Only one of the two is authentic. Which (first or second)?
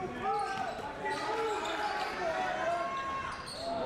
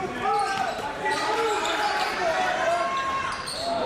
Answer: first